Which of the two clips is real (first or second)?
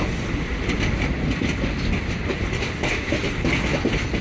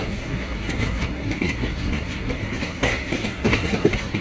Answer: first